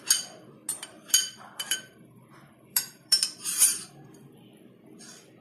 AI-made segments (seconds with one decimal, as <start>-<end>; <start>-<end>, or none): 0.7-3.9